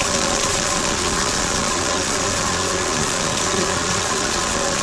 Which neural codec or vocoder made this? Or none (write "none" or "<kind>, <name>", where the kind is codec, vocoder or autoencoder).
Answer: vocoder, Vocos